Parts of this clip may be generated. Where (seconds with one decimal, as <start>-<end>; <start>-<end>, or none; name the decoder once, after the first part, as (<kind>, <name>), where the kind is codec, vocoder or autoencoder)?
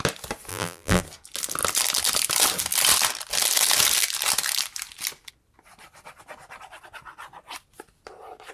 0.5-1.0 (vocoder, BigVGAN v2)